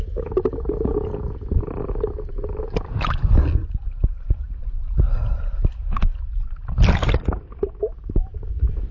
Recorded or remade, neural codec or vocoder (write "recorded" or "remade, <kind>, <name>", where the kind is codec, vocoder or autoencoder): recorded